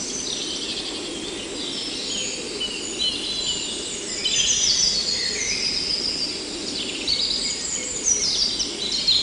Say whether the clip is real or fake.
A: real